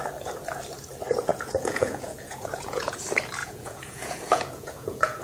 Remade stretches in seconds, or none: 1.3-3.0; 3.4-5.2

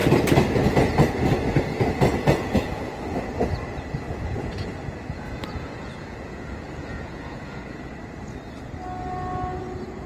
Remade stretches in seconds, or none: 2.1-2.9; 4.1-7.9

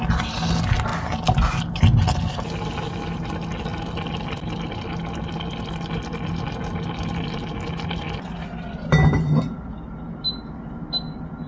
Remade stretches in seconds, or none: none

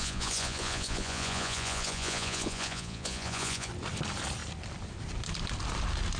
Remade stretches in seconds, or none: 0.0-3.7

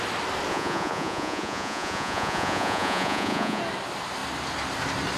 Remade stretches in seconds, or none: 0.5-3.6

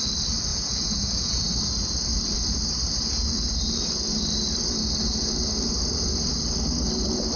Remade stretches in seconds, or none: 0.5-1.4